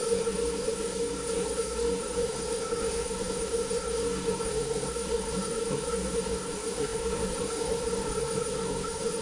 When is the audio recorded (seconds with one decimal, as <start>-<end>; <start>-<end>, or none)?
none